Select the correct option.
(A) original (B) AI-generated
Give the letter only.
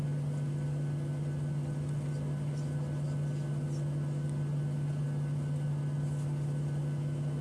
A